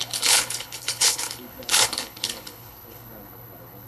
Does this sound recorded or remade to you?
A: remade